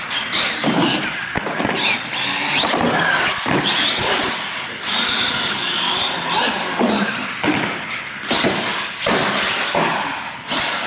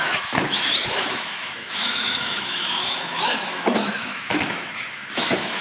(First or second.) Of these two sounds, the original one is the first